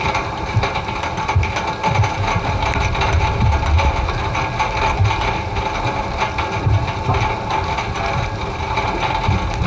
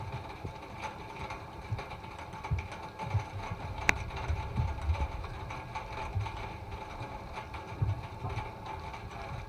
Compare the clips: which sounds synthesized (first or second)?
second